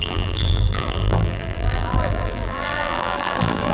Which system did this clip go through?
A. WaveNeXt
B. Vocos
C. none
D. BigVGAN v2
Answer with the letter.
D